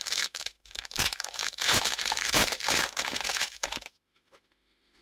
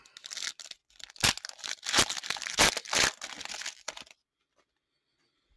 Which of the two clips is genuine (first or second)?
second